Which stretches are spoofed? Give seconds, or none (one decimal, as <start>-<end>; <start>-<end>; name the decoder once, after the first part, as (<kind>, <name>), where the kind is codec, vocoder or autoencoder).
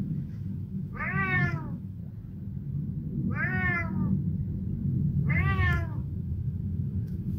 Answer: 0.0-2.0 (autoencoder, DAC-VAE); 5.3-7.4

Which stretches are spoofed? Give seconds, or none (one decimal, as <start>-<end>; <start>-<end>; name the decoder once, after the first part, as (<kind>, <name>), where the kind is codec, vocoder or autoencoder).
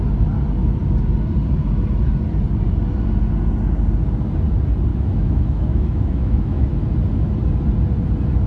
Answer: 4.9-6.7 (autoencoder, DAC-VAE)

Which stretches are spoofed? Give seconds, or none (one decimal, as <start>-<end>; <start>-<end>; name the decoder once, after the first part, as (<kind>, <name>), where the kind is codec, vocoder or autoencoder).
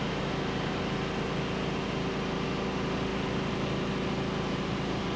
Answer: none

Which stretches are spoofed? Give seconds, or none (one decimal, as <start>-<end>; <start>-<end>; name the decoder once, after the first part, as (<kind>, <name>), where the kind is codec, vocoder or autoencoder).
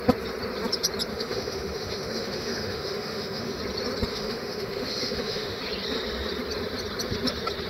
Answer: 1.1-3.6 (autoencoder, DAC-VAE); 4.1-5.6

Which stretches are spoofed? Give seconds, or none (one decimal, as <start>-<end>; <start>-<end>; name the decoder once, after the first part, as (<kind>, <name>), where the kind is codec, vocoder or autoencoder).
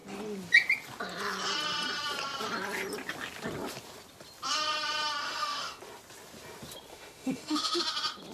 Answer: 5.2-5.8 (autoencoder, DAC-VAE); 6.9-7.8